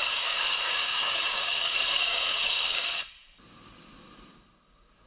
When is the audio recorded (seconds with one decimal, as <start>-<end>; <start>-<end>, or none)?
3.1-5.1